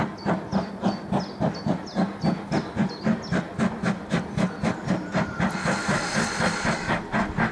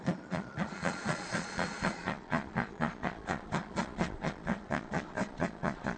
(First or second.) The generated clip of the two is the second